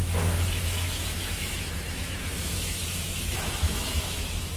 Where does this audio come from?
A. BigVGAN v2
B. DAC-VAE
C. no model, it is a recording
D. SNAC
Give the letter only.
B